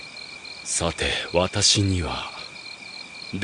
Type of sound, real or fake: real